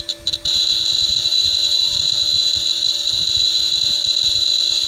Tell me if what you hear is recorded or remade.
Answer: recorded